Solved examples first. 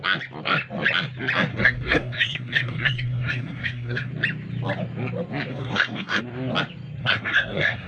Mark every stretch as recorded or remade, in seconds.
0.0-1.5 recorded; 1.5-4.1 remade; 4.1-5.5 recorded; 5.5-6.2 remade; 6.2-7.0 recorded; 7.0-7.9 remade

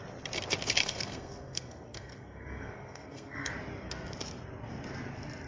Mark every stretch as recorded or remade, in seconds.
0.0-0.8 recorded; 0.8-3.5 remade; 3.5-5.5 recorded

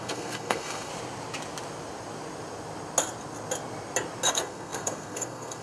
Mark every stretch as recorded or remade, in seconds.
0.0-0.9 remade; 0.9-4.3 recorded; 4.3-5.6 remade

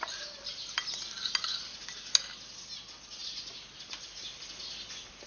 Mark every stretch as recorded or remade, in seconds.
0.0-5.3 recorded